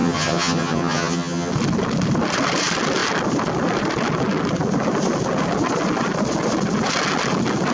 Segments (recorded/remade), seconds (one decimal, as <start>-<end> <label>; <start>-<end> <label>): 0.0-1.5 remade; 1.5-7.7 recorded